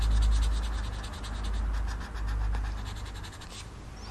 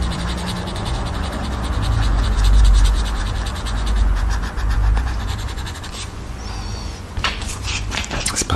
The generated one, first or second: second